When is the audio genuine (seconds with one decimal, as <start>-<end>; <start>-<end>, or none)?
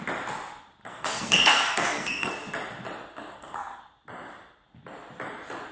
0.0-0.8; 2.3-3.1; 3.8-5.7